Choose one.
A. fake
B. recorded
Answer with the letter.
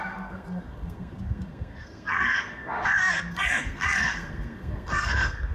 A